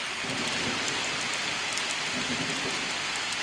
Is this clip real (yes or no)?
yes